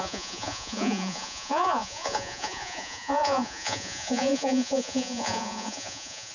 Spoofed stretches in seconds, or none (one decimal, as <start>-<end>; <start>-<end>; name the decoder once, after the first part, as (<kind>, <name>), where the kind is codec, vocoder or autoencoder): 0.0-6.3 (vocoder, Vocos)